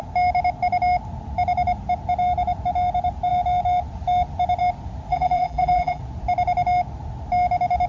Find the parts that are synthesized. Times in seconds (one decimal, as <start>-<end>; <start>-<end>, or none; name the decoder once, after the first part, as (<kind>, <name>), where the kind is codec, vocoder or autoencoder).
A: 5.1-6.0 (vocoder, BigVGAN v2)